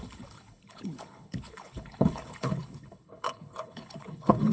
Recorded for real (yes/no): no